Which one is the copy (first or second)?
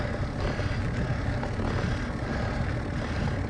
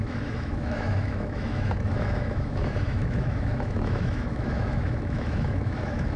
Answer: second